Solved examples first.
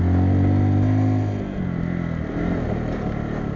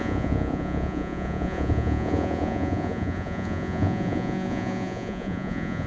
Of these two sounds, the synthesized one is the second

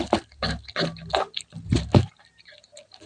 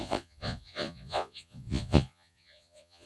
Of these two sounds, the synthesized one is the second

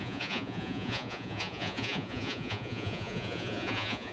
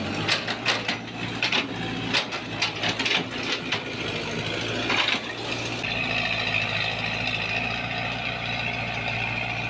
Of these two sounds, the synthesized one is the first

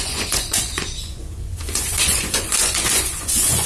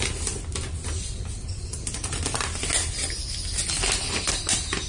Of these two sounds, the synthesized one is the first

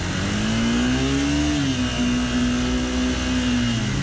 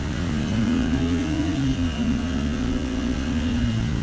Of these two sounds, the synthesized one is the second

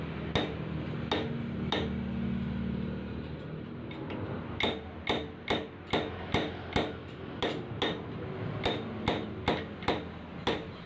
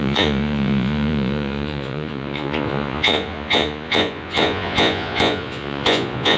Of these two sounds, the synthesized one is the second